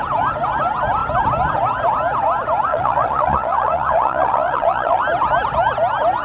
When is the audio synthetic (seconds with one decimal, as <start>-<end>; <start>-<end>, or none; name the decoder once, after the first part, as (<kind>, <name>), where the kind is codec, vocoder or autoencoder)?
2.7-5.0 (vocoder, Vocos)